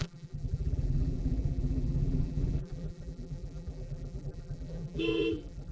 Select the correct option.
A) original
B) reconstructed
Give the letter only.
B